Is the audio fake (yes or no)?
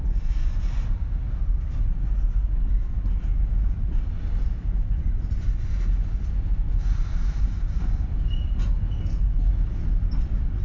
no